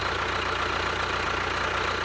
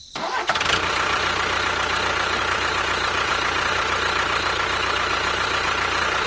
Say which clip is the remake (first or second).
second